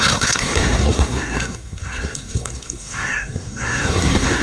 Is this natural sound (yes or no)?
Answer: no